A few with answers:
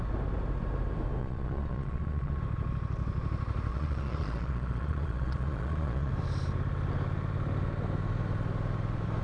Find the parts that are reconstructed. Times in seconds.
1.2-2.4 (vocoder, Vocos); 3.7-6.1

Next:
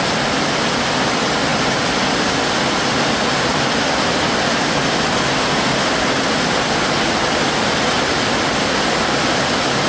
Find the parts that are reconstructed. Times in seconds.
none

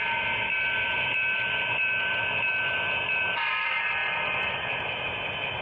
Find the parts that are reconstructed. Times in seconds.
none

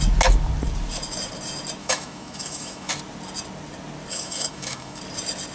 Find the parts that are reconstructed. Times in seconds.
1.8-2.9 (autoencoder, DAC-VAE); 4.1-5.0

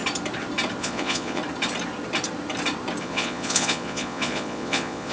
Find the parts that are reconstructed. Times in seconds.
0.8-1.4 (vocoder, Vocos); 3.0-5.1

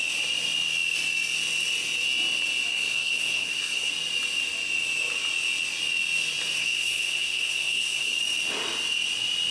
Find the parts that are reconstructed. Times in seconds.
2.7-3.9 (codec, SNAC); 6.6-8.2

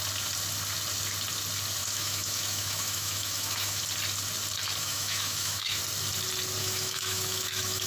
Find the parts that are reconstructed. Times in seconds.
1.8-3.8 (autoencoder, DAC-VAE); 4.8-5.8; 6.6-7.9

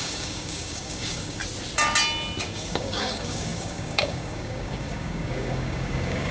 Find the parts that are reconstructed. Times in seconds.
0.0-1.4 (codec, DAC); 2.4-6.3